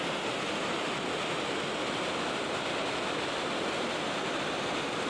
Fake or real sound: real